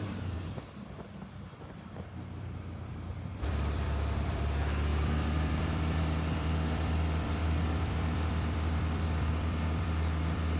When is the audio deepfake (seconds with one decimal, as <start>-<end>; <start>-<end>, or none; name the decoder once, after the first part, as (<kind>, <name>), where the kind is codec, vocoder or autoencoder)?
0.0-10.6 (vocoder, BigVGAN v2)